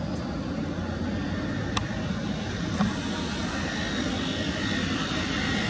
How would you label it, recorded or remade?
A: recorded